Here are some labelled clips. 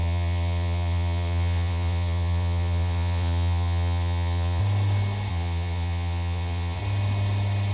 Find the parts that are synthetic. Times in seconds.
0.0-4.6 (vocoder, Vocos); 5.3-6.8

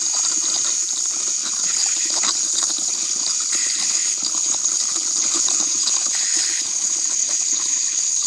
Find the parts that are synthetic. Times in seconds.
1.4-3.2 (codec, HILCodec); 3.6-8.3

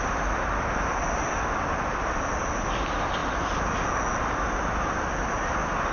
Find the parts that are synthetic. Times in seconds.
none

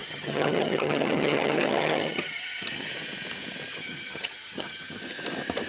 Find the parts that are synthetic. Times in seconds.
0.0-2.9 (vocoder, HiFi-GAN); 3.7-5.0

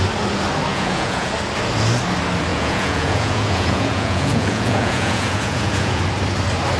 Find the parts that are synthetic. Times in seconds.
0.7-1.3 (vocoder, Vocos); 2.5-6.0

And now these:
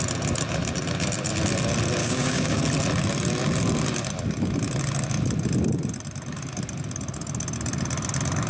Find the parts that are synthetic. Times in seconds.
2.0-2.6 (codec, DAC)

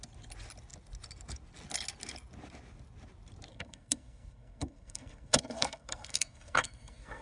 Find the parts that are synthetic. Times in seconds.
3.5-7.2 (codec, SNAC)

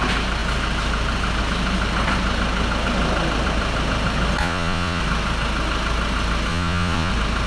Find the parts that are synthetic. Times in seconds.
4.4-5.0 (vocoder, Vocos); 6.5-7.1